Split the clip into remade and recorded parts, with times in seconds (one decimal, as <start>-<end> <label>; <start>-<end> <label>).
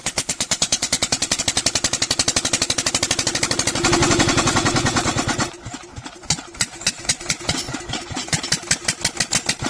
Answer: 0.0-1.4 remade; 1.4-4.0 recorded; 4.0-8.4 remade; 8.4-9.7 recorded